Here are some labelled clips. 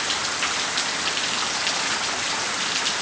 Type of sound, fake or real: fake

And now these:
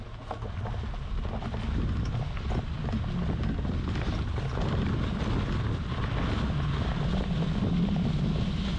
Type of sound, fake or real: real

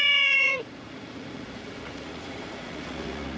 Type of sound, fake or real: fake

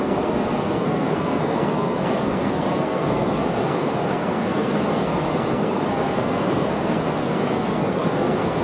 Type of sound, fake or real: fake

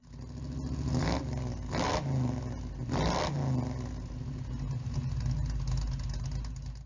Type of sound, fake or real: real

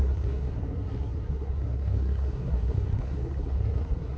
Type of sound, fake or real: fake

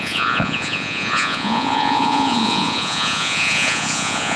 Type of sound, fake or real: fake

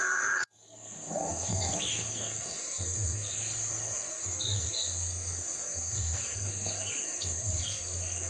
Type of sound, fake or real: fake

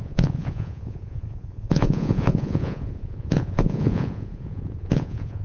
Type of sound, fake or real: fake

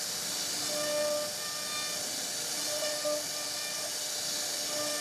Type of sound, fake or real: real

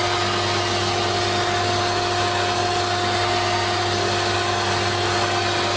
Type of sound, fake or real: real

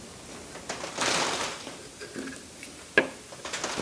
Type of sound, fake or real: real